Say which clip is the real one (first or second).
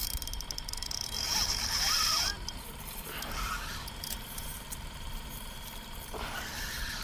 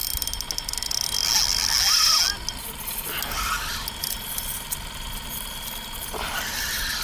second